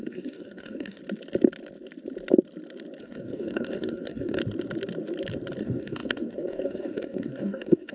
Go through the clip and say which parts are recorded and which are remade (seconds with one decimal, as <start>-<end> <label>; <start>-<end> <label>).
0.0-1.0 remade; 1.0-3.0 recorded; 3.0-4.4 remade; 4.4-5.6 recorded; 5.6-7.9 remade